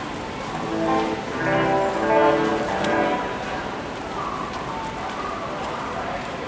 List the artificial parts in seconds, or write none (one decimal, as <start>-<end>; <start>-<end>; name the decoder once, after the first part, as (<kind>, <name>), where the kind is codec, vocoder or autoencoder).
2.5-6.5 (vocoder, BigVGAN v2)

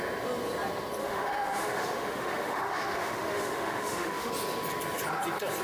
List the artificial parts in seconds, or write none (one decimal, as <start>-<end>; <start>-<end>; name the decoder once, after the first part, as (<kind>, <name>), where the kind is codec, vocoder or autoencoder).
1.0-4.3 (autoencoder, DAC-VAE)